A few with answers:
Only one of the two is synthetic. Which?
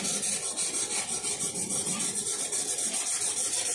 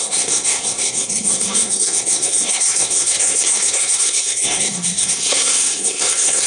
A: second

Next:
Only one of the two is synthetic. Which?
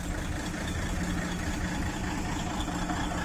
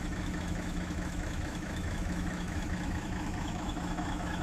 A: second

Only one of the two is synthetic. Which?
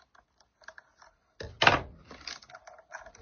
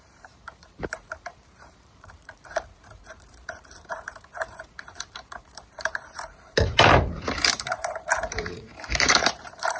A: second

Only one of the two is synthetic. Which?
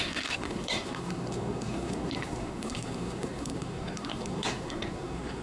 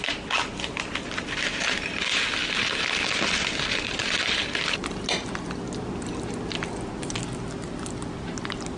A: first